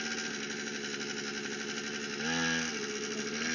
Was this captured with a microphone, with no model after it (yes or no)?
yes